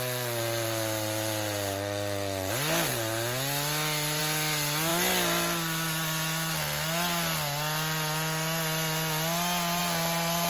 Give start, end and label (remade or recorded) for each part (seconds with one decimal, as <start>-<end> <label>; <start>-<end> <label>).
0.0-10.5 recorded

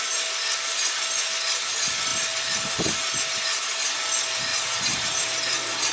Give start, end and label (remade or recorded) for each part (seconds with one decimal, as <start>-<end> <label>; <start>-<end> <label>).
0.0-4.5 recorded; 4.5-5.2 remade; 5.2-5.9 recorded

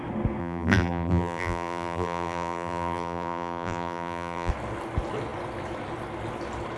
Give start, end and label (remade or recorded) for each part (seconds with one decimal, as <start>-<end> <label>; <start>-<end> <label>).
0.0-0.4 recorded; 0.4-4.5 remade; 4.5-6.8 recorded

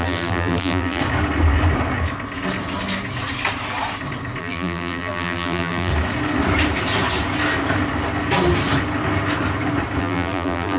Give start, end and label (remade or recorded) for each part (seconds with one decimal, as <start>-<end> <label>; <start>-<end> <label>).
0.0-1.0 remade; 1.0-4.4 recorded; 4.4-5.9 remade; 5.9-10.0 recorded; 10.0-10.8 remade